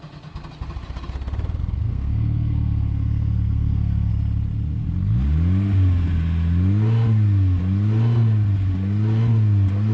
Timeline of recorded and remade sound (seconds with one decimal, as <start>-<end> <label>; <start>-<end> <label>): 0.0-1.6 recorded; 1.6-4.1 remade; 4.1-9.9 recorded